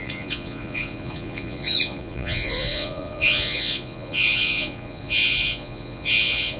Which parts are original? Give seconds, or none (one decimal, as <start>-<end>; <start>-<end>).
none